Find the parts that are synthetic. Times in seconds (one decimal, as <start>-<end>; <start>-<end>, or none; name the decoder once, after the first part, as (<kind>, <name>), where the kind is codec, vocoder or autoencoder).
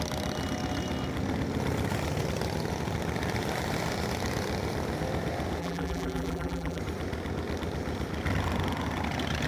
5.6-6.8 (vocoder, BigVGAN v2)